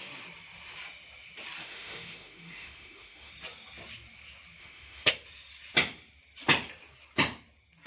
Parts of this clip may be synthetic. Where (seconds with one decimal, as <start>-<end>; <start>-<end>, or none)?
1.6-3.3; 4.6-5.1